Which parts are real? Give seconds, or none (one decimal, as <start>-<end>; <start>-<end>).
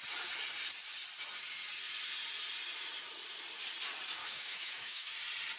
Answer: 0.0-4.2; 5.1-5.6